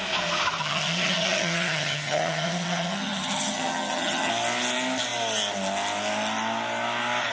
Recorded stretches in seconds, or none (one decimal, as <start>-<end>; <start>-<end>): 0.0-0.6; 4.3-7.3